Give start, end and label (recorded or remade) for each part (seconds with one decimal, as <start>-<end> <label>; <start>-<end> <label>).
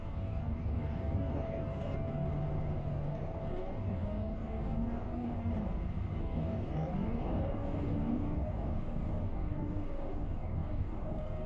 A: 0.0-2.3 remade; 2.3-2.8 recorded; 2.8-5.5 remade; 5.5-6.2 recorded; 6.2-11.5 remade